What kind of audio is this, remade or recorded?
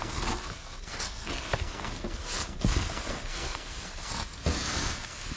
remade